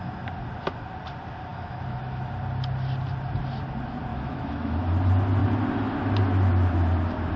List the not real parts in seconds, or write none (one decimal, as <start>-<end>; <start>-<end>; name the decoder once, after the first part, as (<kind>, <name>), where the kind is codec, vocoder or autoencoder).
1.5-2.3 (autoencoder, DAC-VAE); 4.1-4.8